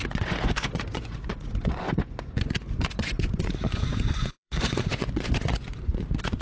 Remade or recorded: remade